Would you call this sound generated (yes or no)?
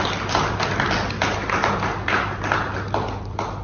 no